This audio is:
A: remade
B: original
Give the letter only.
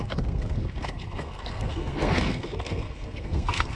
A